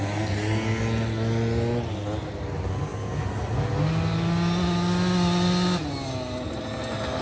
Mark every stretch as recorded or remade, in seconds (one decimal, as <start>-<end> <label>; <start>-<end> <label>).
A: 0.0-7.2 recorded